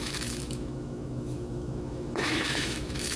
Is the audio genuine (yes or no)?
no